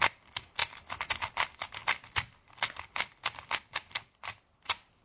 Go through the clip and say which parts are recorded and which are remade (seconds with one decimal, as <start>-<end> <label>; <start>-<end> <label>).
0.0-5.0 remade